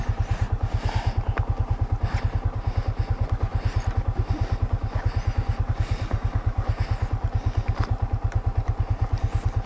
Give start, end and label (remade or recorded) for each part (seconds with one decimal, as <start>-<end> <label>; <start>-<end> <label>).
0.0-9.7 recorded